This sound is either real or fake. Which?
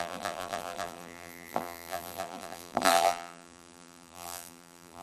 fake